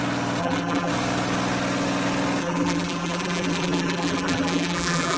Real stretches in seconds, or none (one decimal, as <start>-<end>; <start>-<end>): 0.0-0.4; 0.9-2.4